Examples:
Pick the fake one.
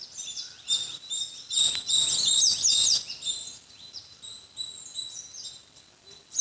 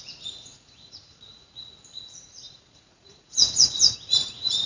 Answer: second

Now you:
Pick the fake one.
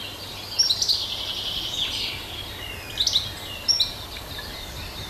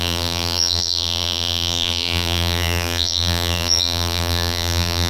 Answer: second